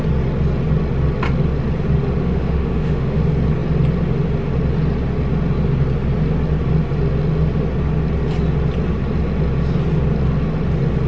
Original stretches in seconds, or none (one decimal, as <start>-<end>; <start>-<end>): 0.0-2.2; 3.2-11.1